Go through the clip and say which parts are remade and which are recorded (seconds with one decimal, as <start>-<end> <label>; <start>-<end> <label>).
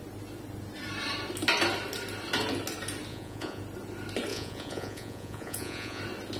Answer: 0.0-3.1 recorded; 3.1-3.6 remade; 3.6-4.3 recorded; 4.3-6.0 remade; 6.0-6.4 recorded